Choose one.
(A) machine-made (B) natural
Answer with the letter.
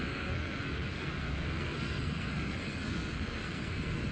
A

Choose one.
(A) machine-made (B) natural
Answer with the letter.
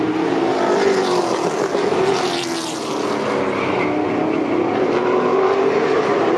B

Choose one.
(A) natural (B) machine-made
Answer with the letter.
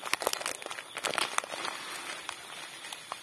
A